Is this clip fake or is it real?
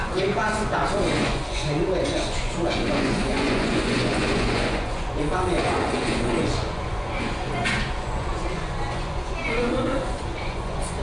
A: fake